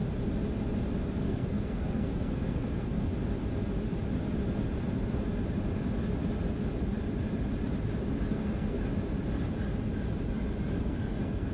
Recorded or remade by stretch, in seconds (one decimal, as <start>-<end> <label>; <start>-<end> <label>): 0.0-1.2 recorded; 1.2-3.1 remade; 3.1-8.3 recorded; 8.3-8.8 remade; 8.8-10.8 recorded; 10.8-11.5 remade